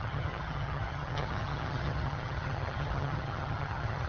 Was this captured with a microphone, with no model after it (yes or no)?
no